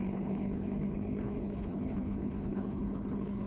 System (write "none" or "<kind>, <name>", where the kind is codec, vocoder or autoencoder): codec, HILCodec